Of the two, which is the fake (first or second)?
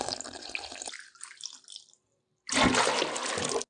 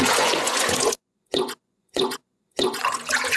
second